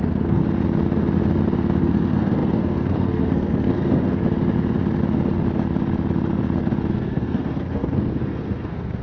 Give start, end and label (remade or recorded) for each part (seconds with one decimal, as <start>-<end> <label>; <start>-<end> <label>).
0.0-0.4 remade; 0.4-1.8 recorded; 1.8-4.2 remade; 4.2-6.9 recorded; 6.9-9.0 remade